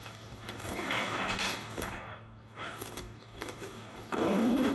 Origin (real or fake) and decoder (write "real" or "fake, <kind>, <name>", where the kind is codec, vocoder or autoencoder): fake, codec, DAC